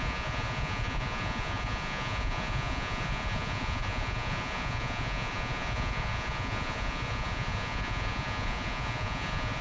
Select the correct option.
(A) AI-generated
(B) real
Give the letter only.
A